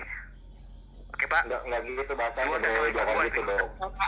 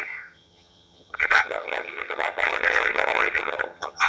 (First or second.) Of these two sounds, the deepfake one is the second